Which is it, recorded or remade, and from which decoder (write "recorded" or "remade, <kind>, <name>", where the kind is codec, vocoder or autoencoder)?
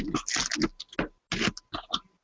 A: recorded